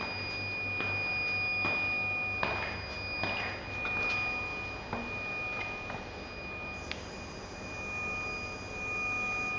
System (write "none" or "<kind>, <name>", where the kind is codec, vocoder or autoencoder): none